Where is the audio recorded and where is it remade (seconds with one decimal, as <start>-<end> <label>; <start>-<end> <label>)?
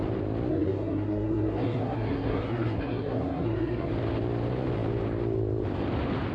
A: 0.0-0.5 recorded; 0.5-3.9 remade; 3.9-6.3 recorded